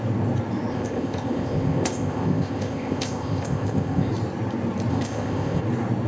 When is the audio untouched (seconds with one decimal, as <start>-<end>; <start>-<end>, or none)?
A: 0.0-0.7; 4.1-4.9; 5.6-6.1